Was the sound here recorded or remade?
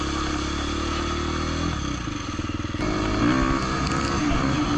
recorded